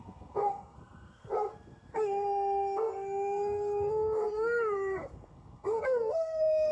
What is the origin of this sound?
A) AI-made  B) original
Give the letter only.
A